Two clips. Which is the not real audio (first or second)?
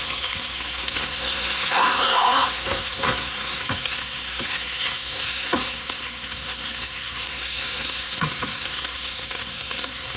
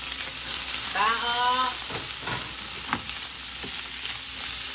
first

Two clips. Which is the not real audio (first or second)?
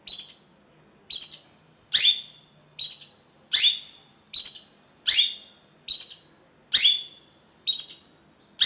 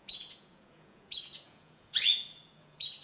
second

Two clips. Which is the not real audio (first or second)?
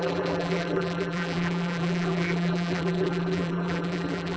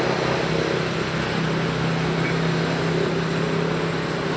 first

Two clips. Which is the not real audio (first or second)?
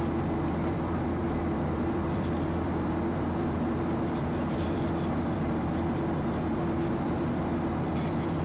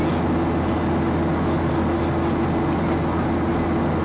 first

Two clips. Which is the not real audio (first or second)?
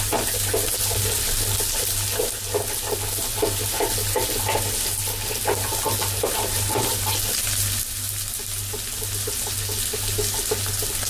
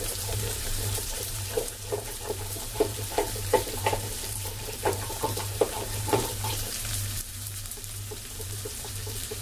second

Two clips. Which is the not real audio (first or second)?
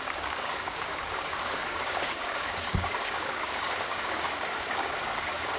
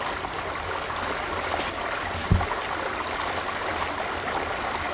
first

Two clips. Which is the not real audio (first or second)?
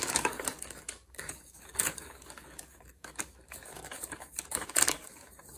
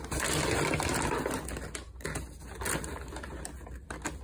first